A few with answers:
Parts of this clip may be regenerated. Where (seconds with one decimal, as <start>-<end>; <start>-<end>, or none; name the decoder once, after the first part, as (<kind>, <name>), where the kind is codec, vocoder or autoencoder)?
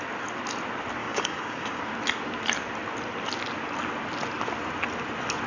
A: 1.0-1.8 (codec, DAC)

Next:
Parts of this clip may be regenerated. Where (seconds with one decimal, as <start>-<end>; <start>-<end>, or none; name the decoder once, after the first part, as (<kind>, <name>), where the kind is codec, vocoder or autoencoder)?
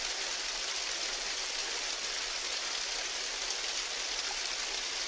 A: none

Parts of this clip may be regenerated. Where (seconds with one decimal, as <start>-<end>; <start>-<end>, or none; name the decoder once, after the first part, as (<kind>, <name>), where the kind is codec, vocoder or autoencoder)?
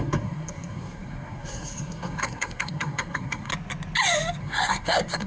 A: 0.0-3.5 (codec, SNAC); 4.4-5.3